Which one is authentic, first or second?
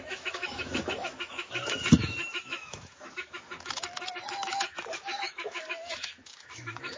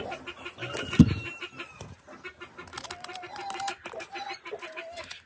second